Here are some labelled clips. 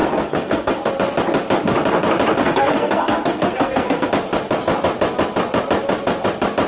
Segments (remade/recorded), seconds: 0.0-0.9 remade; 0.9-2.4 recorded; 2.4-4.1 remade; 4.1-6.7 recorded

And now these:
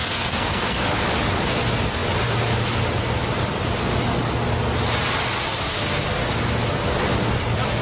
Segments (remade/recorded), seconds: 0.0-0.8 remade; 0.8-7.8 recorded

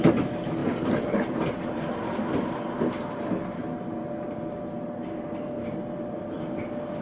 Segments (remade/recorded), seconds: 0.0-7.0 recorded

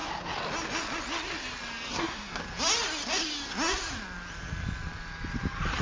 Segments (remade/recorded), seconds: 0.0-1.9 recorded; 1.9-2.4 remade; 2.4-5.8 recorded

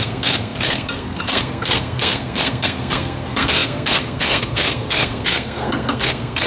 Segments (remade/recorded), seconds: 0.0-6.5 remade

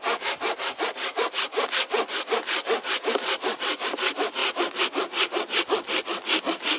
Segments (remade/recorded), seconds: 0.0-6.8 recorded

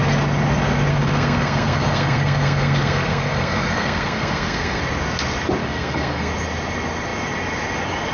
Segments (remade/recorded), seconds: 0.0-0.9 recorded; 0.9-4.8 remade; 4.8-5.6 recorded; 5.6-6.3 remade; 6.3-8.1 recorded